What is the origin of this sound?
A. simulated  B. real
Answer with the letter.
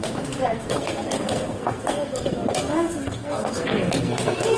A